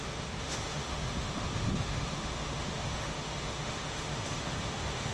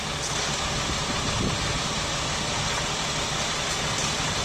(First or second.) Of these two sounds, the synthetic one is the first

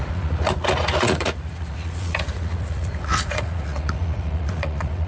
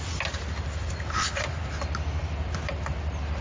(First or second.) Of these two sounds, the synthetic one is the first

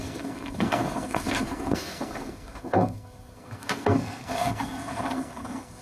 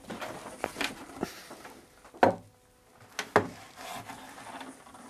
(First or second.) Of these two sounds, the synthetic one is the first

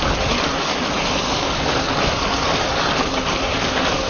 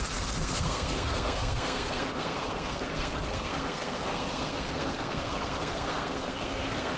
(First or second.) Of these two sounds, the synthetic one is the second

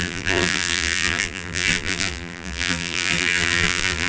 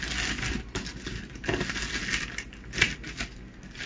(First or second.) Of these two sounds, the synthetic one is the first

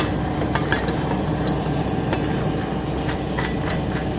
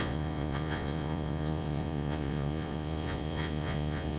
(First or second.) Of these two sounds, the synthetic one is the second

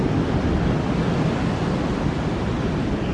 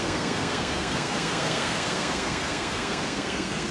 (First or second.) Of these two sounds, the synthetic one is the second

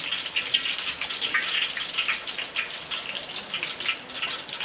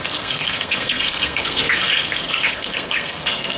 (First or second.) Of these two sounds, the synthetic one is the second